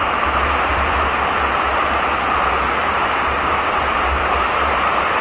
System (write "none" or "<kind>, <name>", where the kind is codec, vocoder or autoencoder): none